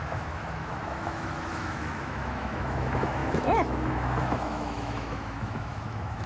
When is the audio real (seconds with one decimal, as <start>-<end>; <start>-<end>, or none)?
none